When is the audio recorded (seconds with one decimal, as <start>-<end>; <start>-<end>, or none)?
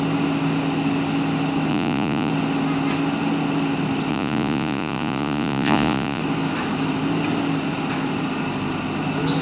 0.0-1.7; 2.3-4.1; 6.2-9.4